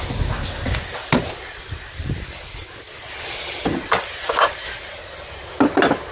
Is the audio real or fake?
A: real